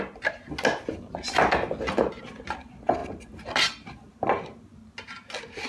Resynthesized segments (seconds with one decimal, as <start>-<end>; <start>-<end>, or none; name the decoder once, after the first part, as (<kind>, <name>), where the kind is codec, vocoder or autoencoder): none